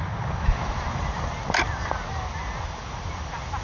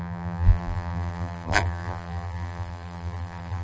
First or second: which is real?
first